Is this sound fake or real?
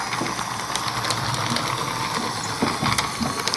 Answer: real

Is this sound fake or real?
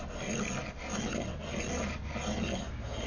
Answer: real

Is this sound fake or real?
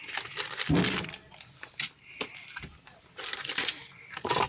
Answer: real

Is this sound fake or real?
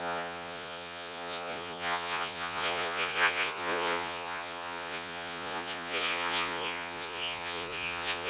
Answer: fake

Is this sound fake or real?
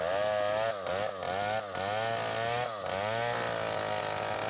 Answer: real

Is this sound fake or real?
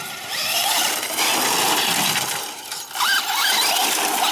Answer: real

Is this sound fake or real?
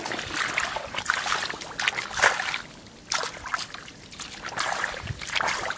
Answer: real